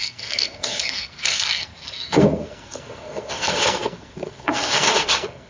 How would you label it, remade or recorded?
remade